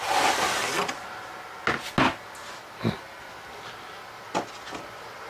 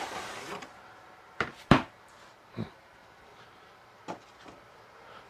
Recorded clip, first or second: first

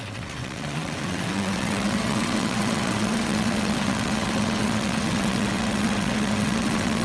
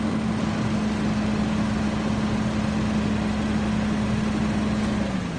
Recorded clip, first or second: second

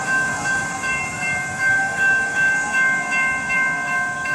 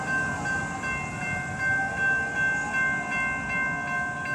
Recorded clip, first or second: second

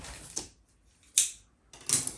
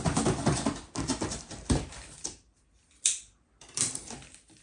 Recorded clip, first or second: first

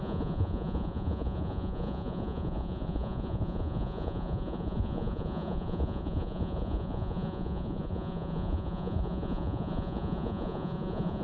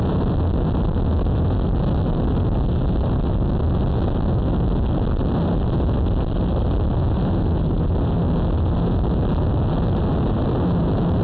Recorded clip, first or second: second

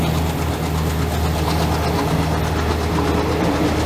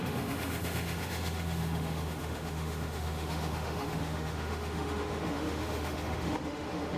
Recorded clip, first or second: first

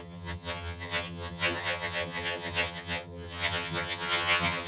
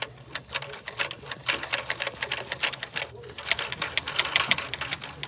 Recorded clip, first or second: second